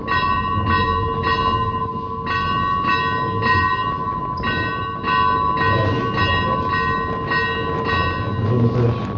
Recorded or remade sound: recorded